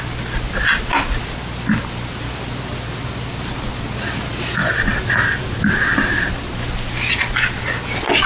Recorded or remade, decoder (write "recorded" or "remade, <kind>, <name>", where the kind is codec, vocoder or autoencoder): recorded